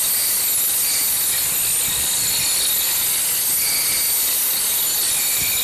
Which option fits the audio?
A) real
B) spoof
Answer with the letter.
A